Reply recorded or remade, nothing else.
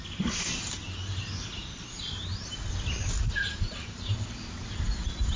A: recorded